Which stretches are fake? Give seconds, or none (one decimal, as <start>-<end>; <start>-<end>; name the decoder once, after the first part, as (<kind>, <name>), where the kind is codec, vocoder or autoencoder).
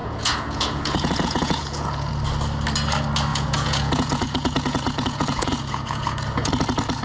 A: 0.0-2.1 (vocoder, Vocos); 3.3-6.5